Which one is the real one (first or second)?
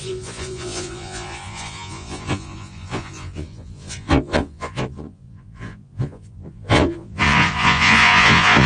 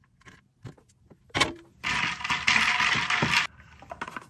second